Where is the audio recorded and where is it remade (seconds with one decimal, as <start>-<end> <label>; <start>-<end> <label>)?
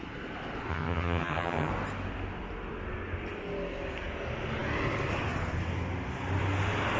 0.0-0.7 recorded; 0.7-1.7 remade; 1.7-7.0 recorded